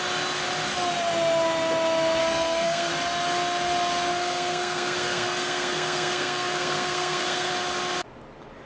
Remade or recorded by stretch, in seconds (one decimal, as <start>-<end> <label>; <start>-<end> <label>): 0.0-2.2 recorded; 2.2-2.9 remade; 2.9-4.1 recorded; 4.1-7.5 remade; 7.5-8.7 recorded